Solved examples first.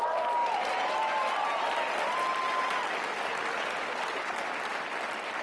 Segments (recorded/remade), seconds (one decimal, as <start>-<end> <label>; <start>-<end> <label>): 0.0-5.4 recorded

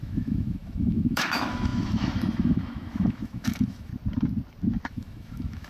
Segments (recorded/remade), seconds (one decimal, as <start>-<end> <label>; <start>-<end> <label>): 0.0-3.9 remade; 3.9-4.9 recorded; 4.9-5.7 remade

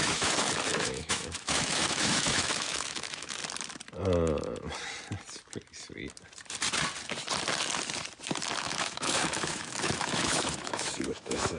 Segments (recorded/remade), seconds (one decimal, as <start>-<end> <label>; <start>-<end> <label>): 0.0-3.4 remade; 3.4-8.6 recorded; 8.6-11.6 remade

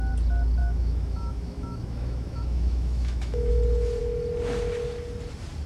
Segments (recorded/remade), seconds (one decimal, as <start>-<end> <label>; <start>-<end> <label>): 0.0-0.6 recorded; 0.6-3.5 remade; 3.5-5.7 recorded

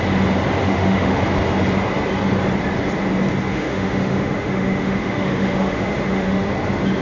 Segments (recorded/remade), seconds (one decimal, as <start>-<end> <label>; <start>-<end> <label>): 0.0-0.6 recorded; 0.6-1.2 remade; 1.2-3.5 recorded; 3.5-6.5 remade; 6.5-7.0 recorded

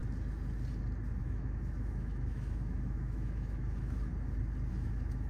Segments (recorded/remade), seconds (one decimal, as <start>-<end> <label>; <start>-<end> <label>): 0.0-1.2 recorded; 1.2-4.1 remade; 4.1-4.7 recorded; 4.7-5.3 remade